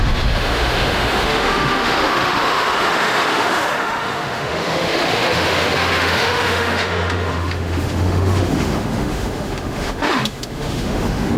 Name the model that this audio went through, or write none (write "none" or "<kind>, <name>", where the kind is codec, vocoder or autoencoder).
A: autoencoder, DAC-VAE